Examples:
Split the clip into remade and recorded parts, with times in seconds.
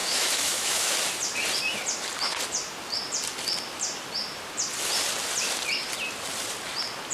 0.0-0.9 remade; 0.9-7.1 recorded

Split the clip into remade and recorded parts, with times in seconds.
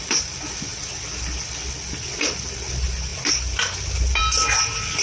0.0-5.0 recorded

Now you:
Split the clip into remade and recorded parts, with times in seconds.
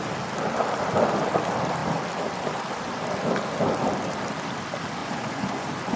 0.0-5.0 recorded; 5.0-6.0 remade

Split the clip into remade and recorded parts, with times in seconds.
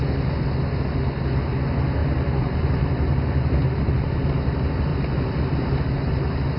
0.0-2.0 recorded; 2.0-4.3 remade; 4.3-4.9 recorded; 4.9-5.8 remade; 5.8-6.6 recorded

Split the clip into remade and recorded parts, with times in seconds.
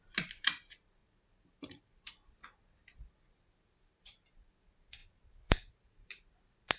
0.0-1.0 recorded; 1.0-1.9 remade; 1.9-5.0 recorded; 5.0-6.3 remade; 6.3-6.8 recorded